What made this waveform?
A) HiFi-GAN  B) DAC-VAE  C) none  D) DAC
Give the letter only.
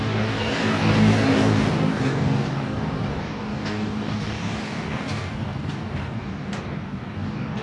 D